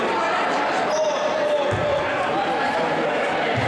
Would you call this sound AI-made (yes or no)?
no